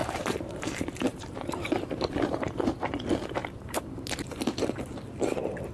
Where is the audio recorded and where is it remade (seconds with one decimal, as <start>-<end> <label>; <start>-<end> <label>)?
0.0-3.0 remade; 3.0-3.4 recorded; 3.4-4.1 remade; 4.1-5.7 recorded